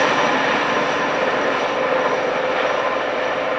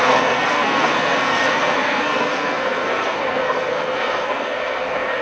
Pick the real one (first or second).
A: first